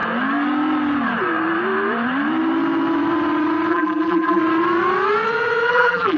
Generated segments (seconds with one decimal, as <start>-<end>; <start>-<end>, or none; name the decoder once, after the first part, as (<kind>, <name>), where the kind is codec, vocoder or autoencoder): 3.7-4.4 (vocoder, BigVGAN v2); 5.7-6.2